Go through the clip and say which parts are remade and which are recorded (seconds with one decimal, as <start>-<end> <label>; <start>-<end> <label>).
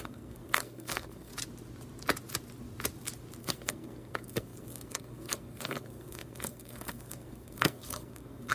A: 0.0-1.3 remade; 1.3-3.4 recorded; 3.4-8.5 remade